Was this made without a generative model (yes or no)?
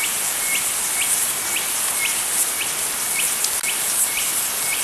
yes